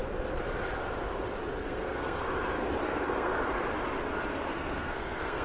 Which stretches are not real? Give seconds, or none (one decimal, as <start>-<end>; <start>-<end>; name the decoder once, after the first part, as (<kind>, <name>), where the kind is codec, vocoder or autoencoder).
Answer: 1.6-2.3 (codec, SNAC); 2.8-3.3; 4.5-5.4